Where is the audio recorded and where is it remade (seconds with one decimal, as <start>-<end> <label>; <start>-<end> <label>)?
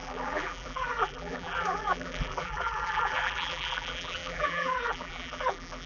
0.0-5.9 remade